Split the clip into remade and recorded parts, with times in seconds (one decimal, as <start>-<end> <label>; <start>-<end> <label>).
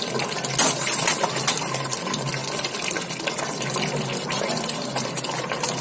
0.0-5.8 recorded